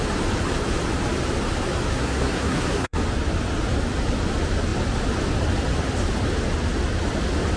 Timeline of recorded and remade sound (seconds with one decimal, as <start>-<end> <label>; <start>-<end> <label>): 0.0-1.9 recorded; 1.9-3.0 remade; 3.0-7.6 recorded